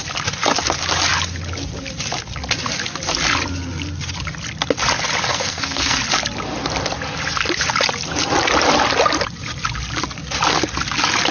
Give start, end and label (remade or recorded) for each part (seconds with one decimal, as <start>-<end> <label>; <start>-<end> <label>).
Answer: 0.0-5.3 recorded; 5.3-6.0 remade; 6.0-11.3 recorded